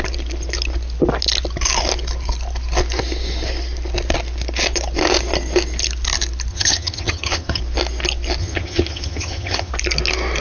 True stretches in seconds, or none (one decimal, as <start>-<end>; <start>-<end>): 0.0-6.5; 7.6-8.4; 9.7-10.4